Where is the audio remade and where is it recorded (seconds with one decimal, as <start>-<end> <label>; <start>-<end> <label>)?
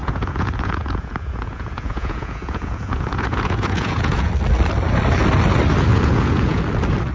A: 0.0-4.3 remade; 4.3-5.9 recorded; 5.9-6.6 remade; 6.6-7.1 recorded